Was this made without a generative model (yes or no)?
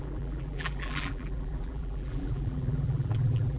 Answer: no